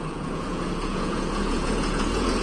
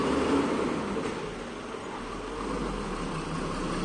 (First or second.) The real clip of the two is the second